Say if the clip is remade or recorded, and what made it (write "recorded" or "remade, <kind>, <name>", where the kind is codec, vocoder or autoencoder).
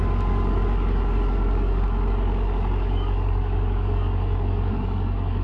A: remade, codec, DAC